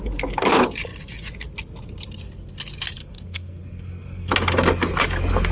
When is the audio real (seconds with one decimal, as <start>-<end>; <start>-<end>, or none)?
0.0-3.0; 4.3-5.5